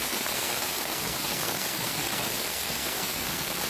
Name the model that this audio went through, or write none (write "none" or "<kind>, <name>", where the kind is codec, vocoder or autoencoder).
codec, SNAC